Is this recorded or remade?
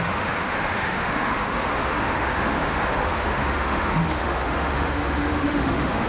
remade